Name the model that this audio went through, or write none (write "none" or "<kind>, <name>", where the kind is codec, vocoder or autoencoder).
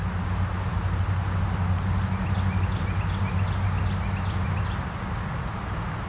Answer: none